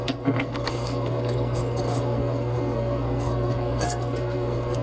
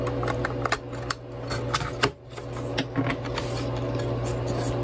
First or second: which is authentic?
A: second